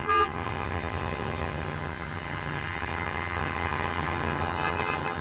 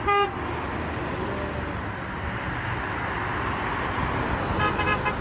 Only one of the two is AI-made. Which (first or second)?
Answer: first